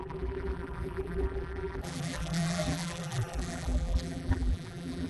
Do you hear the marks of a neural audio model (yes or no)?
yes